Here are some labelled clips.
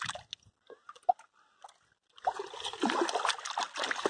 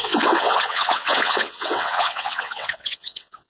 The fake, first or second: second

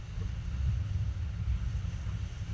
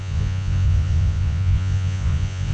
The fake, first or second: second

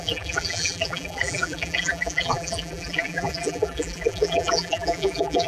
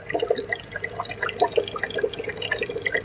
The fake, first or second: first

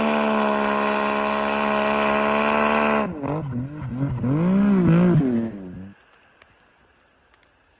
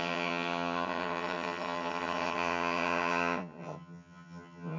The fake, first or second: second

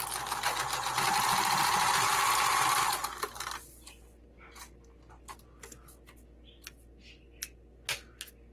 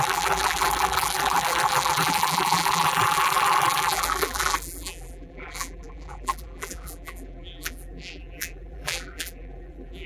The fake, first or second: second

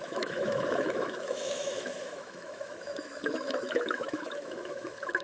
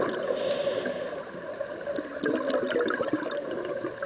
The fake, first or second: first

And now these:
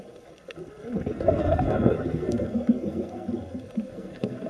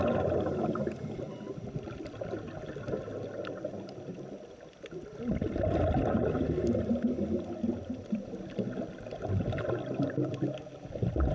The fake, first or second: first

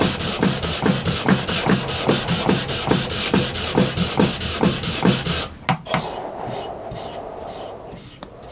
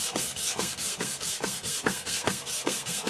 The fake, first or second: second